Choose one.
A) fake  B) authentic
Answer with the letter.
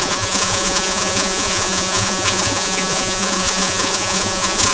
A